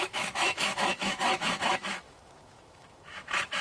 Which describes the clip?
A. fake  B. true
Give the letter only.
A